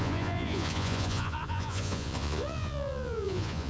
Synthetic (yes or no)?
yes